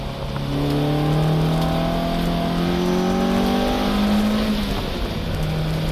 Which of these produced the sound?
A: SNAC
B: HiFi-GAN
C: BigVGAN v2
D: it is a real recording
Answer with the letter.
D